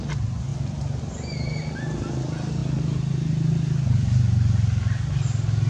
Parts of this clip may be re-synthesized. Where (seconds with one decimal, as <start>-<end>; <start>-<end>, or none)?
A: none